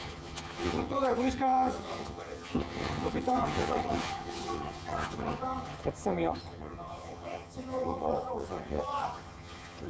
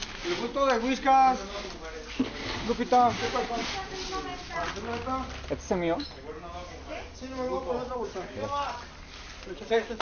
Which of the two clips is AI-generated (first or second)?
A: first